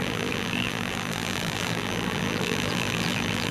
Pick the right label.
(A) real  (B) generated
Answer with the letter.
B